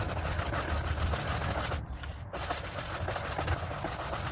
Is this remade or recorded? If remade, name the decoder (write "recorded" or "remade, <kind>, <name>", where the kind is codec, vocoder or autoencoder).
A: recorded